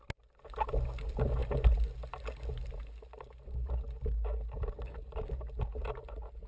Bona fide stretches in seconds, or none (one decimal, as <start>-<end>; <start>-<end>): 0.0-6.5